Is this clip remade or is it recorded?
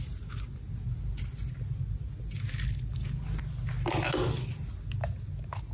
recorded